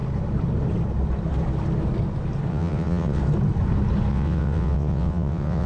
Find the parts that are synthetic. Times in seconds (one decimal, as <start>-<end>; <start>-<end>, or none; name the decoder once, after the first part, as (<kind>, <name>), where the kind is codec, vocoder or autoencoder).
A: 2.5-3.2 (vocoder, WaveNeXt); 4.1-5.7